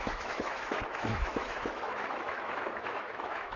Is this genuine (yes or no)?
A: no